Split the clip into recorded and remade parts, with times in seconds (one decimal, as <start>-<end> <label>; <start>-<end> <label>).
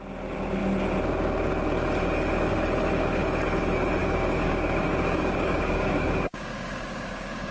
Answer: 0.0-4.0 recorded; 4.0-7.5 remade